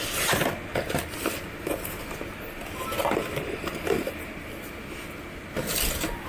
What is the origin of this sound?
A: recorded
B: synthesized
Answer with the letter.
A